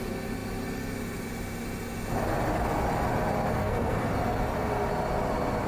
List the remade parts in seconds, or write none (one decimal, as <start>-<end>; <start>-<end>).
3.5-4.1